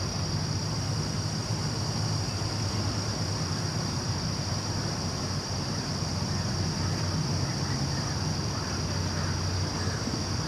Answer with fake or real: real